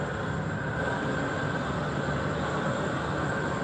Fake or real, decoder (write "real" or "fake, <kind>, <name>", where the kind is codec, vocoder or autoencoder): real